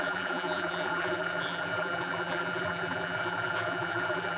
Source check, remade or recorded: remade